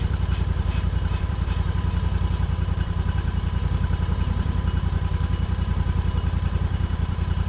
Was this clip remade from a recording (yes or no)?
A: yes